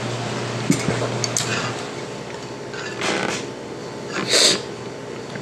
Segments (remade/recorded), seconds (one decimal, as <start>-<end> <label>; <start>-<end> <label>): 0.0-3.8 recorded; 3.8-4.4 remade; 4.4-5.4 recorded